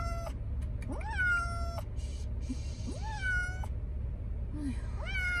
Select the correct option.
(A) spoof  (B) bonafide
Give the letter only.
B